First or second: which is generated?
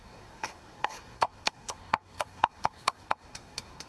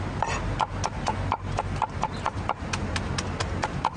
first